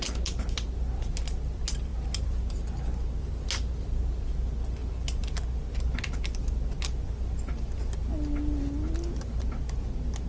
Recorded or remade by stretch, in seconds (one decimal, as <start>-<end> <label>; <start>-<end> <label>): 0.0-10.3 recorded